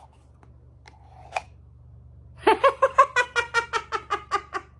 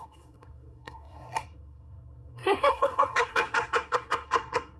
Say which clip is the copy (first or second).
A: second